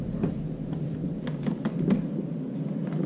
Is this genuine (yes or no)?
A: yes